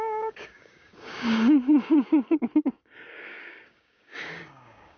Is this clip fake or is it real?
fake